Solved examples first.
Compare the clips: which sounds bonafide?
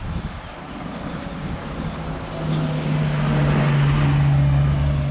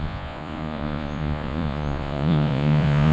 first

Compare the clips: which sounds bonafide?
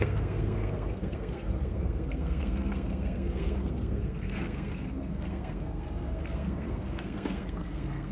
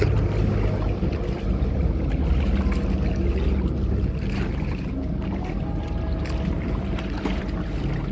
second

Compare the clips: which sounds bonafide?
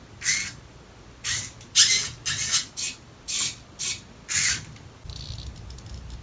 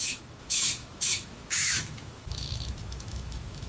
first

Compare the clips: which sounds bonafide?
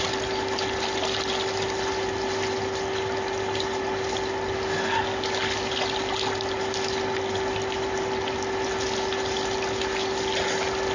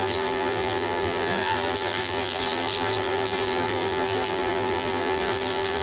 first